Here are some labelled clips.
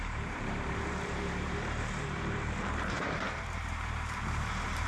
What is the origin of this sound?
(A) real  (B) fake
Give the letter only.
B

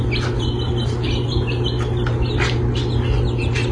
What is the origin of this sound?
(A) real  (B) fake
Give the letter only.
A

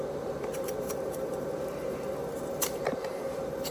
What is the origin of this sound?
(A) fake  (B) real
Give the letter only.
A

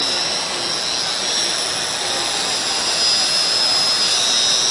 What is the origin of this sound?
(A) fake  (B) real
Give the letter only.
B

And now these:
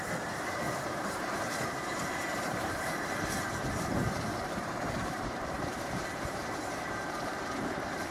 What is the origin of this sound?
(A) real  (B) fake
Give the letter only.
B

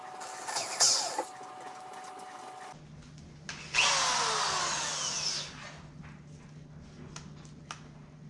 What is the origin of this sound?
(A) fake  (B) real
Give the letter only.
B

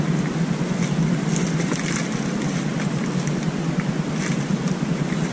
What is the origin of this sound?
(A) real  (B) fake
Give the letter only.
A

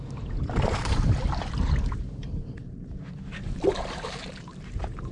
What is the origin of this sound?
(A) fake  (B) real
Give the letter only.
A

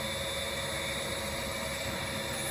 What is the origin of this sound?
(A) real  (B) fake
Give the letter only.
A